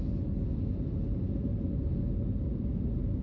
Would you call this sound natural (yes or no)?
yes